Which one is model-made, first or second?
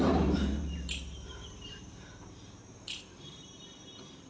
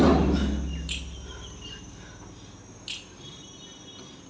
first